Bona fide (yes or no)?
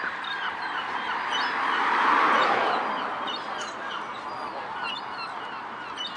yes